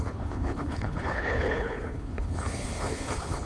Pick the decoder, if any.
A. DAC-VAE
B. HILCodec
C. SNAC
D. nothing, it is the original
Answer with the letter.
B